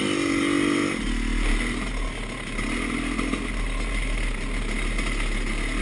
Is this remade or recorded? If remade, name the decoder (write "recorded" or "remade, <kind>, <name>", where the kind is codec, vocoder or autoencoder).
recorded